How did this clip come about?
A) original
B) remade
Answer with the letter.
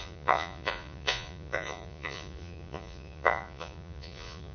B